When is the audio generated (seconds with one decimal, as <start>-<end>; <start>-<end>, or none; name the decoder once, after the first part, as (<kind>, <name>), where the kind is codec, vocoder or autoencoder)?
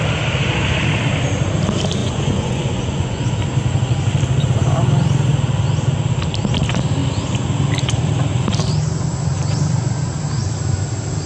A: 2.0-3.3 (vocoder, Vocos)